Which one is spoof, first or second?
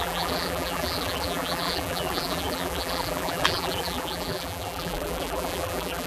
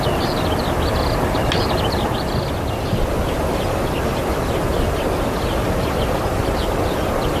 first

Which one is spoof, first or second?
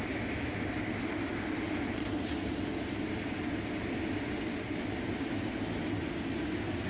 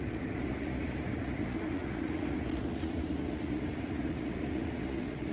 second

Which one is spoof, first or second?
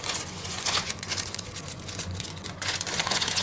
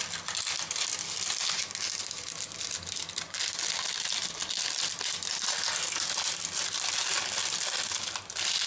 first